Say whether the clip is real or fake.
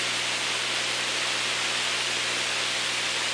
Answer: real